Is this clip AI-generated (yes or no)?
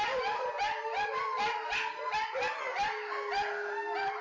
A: no